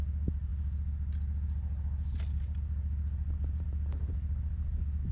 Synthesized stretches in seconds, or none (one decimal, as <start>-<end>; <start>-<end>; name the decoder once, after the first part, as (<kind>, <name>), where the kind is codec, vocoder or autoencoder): none